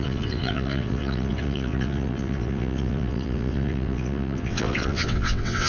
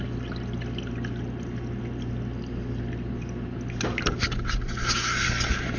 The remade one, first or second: first